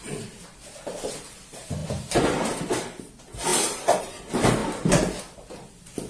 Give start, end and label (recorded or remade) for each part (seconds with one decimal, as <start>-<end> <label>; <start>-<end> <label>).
0.0-6.1 recorded